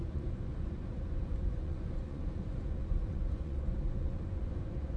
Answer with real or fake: fake